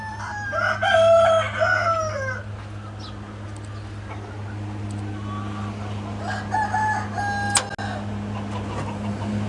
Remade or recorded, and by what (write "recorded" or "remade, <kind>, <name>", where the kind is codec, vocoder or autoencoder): recorded